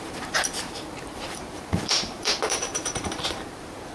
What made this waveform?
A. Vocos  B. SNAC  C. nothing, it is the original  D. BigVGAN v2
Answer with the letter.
D